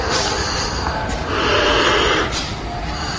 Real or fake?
real